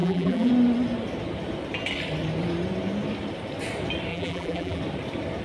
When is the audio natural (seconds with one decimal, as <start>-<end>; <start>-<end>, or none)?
0.5-4.1; 4.8-5.4